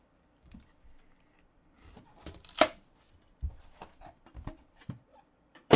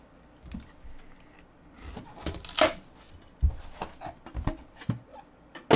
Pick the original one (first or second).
second